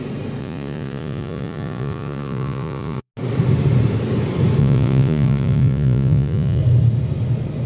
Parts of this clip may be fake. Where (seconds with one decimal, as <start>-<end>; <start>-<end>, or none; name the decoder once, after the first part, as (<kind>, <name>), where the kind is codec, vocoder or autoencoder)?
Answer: 0.4-3.1 (vocoder, Vocos); 4.6-6.6